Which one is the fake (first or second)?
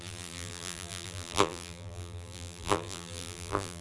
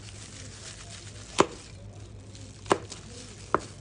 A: first